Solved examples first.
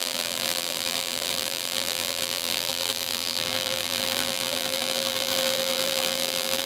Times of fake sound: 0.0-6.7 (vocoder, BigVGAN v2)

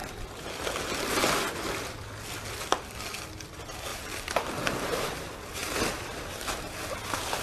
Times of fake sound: 3.9-5.1 (vocoder, BigVGAN v2); 5.6-6.7

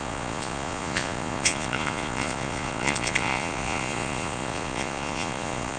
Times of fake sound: 0.0-5.8 (vocoder, Vocos)

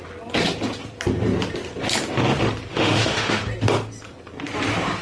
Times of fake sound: 2.7-3.4 (autoencoder, DAC-VAE)

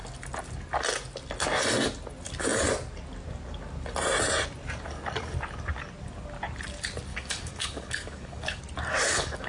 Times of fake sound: 7.1-8.6 (codec, DAC); 9.0-9.5

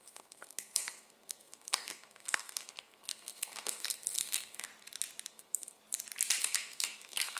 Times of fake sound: 0.0-4.7 (codec, SNAC); 5.3-5.8; 6.4-7.4

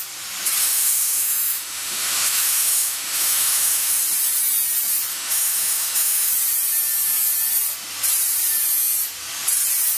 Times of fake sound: 0.6-4.0 (autoencoder, DAC-VAE); 5.1-6.3

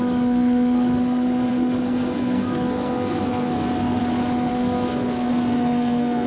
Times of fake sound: 0.0-4.0 (codec, SNAC); 4.5-6.3